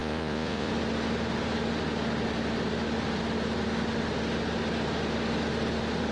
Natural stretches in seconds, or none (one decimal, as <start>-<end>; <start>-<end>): 0.7-6.1